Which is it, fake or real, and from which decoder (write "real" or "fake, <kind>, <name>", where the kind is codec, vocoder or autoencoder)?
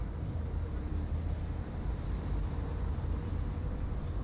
fake, vocoder, BigVGAN v2